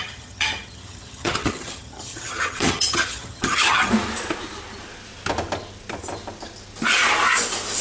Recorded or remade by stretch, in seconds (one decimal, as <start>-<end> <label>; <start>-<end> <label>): 0.0-3.9 remade; 3.9-7.8 recorded